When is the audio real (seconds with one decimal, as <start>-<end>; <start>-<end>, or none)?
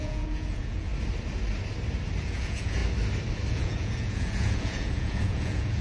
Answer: 0.9-2.2; 2.8-3.5